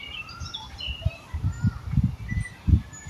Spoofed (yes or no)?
yes